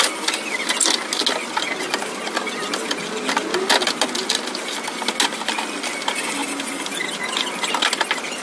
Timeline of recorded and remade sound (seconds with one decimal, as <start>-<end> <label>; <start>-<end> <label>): 0.0-8.4 recorded